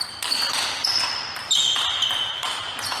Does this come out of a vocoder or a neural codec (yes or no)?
no